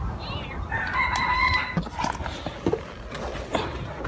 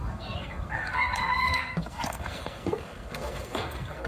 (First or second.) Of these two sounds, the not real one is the second